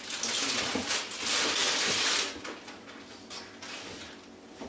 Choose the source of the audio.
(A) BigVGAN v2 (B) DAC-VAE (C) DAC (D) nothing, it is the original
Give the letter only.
D